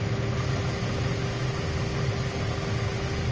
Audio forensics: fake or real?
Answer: real